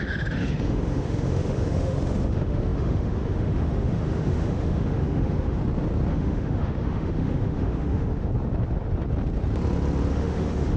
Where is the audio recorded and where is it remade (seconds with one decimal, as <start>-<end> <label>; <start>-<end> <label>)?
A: 0.0-5.6 remade; 5.6-6.1 recorded; 6.1-8.3 remade; 8.3-10.1 recorded; 10.1-10.8 remade